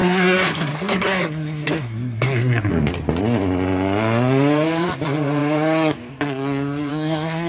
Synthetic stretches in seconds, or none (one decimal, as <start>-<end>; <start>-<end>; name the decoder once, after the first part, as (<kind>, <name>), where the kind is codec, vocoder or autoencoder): 0.0-2.7 (codec, SNAC); 6.9-7.5